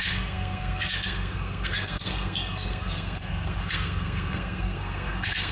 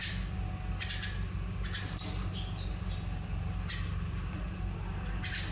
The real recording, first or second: second